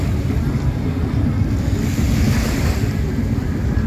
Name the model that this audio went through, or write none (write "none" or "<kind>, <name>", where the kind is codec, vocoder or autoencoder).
none